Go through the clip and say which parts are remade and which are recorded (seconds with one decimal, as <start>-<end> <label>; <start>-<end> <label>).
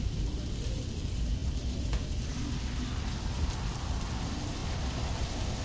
0.0-1.4 recorded; 1.4-3.5 remade; 3.5-5.6 recorded